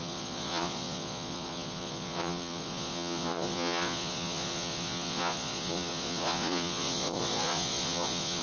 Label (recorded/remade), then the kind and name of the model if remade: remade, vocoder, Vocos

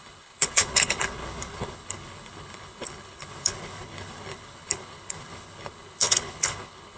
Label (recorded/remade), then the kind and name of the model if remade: remade, codec, HILCodec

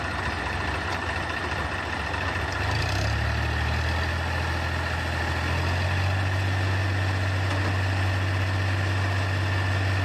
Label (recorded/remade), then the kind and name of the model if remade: recorded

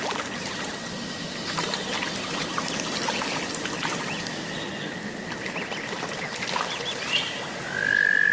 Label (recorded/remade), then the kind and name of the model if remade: recorded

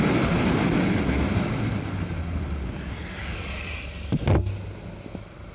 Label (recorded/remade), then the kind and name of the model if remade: recorded